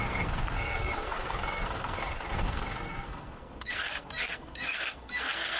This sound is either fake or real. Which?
fake